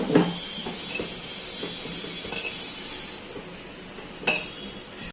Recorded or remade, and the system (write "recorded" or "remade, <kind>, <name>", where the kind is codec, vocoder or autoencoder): recorded